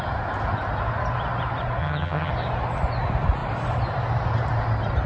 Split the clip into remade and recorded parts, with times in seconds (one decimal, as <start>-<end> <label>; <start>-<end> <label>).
0.0-1.8 recorded; 1.8-2.3 remade; 2.3-5.1 recorded